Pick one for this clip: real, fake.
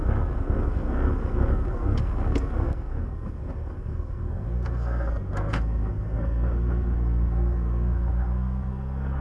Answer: fake